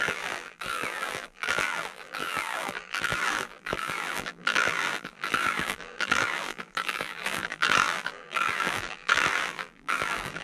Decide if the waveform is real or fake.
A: fake